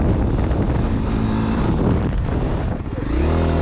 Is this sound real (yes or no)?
yes